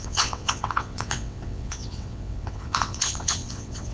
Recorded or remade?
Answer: remade